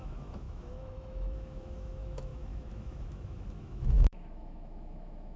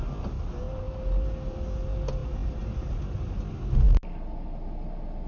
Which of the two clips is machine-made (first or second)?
first